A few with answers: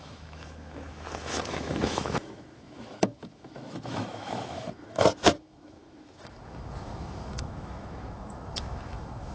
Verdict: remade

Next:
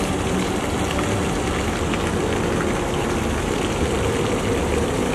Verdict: recorded